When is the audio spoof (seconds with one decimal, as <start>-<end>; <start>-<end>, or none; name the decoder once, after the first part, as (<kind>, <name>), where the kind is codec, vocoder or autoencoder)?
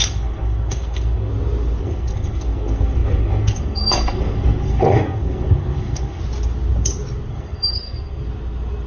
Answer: 0.0-1.3 (codec, SNAC); 1.8-6.2; 7.3-8.2